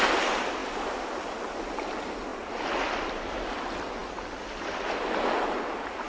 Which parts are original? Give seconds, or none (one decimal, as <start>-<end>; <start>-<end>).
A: 0.0-6.1